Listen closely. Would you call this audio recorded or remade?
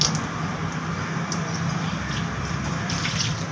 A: recorded